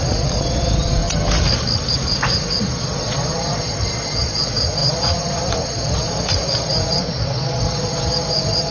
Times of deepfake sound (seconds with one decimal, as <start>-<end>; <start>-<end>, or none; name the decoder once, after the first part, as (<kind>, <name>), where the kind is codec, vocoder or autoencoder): 0.0-1.0 (vocoder, Vocos); 1.9-8.7